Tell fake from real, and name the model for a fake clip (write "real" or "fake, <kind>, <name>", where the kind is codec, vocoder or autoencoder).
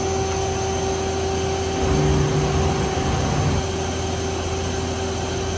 real